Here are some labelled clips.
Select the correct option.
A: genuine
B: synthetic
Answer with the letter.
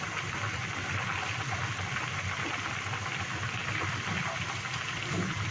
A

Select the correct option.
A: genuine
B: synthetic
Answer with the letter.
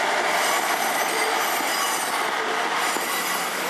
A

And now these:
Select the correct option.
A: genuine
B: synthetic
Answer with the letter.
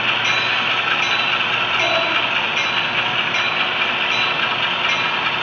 A